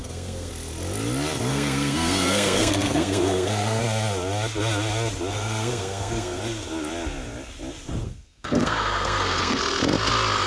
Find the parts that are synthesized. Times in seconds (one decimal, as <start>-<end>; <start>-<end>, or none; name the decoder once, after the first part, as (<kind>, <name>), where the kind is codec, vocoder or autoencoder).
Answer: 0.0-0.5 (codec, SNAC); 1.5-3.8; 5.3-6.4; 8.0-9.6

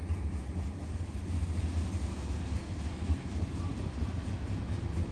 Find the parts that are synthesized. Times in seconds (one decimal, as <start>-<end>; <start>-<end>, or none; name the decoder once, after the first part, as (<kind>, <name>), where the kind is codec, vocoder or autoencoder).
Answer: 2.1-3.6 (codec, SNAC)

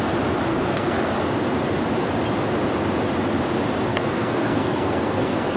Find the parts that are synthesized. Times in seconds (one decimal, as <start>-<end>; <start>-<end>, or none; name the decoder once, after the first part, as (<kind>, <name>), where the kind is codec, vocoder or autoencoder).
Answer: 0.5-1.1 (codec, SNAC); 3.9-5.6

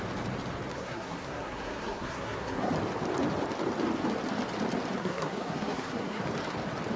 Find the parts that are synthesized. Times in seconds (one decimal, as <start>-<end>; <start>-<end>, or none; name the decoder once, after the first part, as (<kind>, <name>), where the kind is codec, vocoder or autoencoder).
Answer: 0.7-2.7 (codec, SNAC); 5.0-6.2

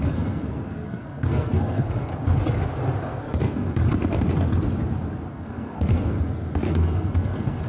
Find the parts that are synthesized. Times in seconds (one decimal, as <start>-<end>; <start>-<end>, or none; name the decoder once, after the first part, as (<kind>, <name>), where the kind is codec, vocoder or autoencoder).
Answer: 0.0-2.1 (codec, SNAC); 3.0-3.8; 5.3-7.7